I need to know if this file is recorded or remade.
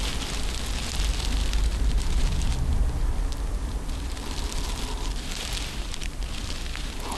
remade